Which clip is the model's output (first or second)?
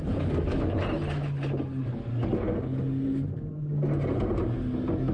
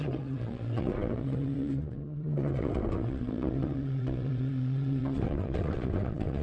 second